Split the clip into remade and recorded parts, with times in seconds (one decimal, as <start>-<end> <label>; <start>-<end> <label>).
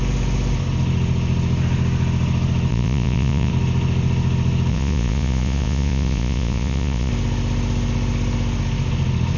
0.0-2.7 recorded; 2.7-3.5 remade; 3.5-4.7 recorded; 4.7-7.1 remade; 7.1-9.4 recorded